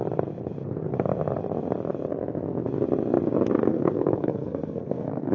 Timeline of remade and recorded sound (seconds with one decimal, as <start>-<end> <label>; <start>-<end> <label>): 0.0-3.6 recorded; 3.6-5.3 remade